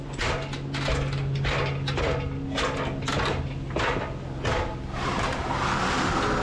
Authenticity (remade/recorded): recorded